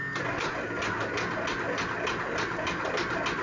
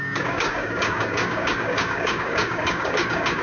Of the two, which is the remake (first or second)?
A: second